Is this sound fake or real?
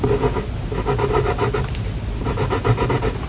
real